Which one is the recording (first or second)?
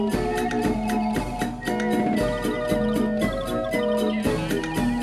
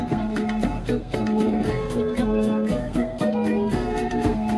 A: first